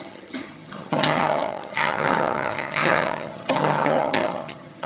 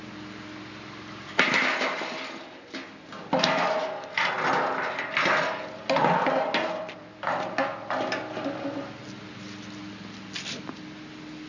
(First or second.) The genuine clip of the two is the second